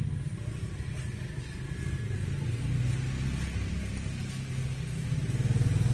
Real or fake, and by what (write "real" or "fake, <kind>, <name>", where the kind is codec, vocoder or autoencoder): real